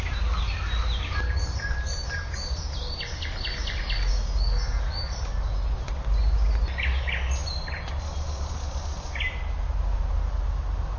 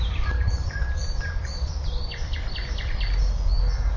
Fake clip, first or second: second